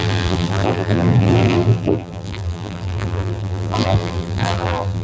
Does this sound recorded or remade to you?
remade